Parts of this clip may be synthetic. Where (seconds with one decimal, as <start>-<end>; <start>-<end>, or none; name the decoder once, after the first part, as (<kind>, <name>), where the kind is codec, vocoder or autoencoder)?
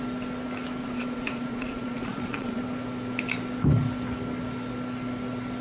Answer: 0.8-2.6 (vocoder, Vocos)